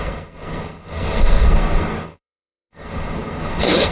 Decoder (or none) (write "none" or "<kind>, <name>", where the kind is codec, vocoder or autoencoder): codec, SNAC